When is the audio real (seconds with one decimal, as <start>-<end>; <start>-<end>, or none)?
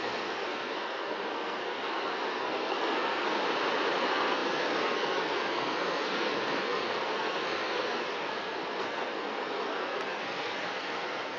3.4-4.0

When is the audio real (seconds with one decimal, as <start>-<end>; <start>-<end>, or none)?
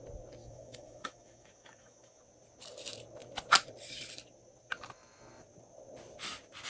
0.0-0.4; 2.2-6.7